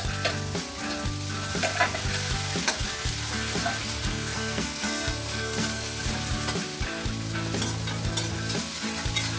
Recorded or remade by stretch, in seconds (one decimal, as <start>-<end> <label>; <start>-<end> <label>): 0.0-4.1 recorded; 4.1-6.0 remade; 6.0-9.4 recorded